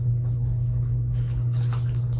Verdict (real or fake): fake